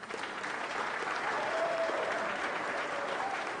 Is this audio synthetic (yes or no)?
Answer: yes